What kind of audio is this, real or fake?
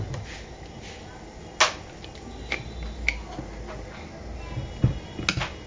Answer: real